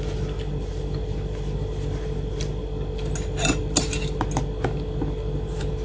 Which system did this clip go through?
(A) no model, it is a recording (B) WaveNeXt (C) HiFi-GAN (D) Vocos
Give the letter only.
A